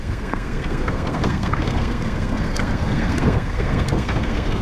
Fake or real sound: fake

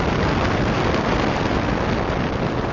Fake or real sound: real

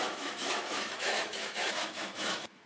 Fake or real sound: fake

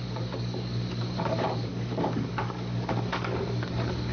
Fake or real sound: fake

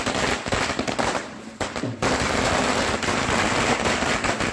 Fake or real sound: fake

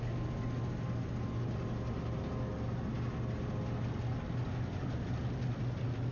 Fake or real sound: real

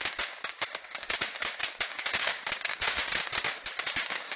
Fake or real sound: fake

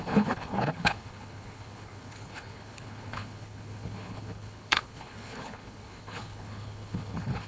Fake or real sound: fake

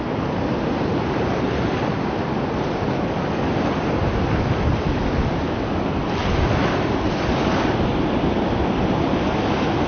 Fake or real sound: real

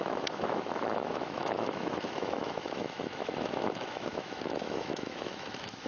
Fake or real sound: fake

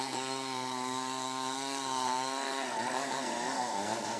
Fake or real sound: fake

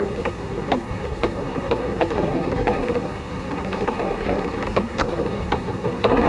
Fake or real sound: fake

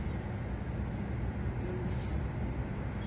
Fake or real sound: real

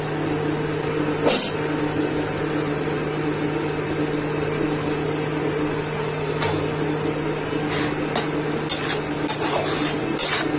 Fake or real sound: real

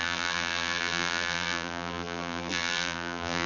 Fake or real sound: fake